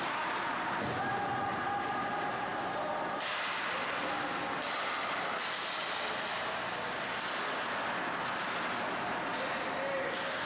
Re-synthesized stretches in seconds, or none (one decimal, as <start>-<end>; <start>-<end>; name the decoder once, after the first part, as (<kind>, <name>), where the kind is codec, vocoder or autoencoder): none